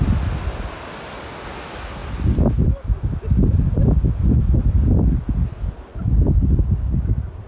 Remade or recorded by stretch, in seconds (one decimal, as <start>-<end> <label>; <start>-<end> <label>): 0.0-7.5 recorded